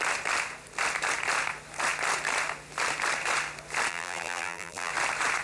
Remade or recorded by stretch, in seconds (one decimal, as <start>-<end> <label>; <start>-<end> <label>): 0.0-3.9 recorded; 3.9-4.9 remade; 4.9-5.4 recorded